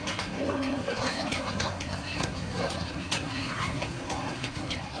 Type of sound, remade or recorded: remade